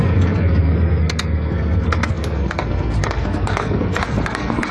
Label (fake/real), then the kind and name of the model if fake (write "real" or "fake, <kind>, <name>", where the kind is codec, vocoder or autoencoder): fake, codec, SNAC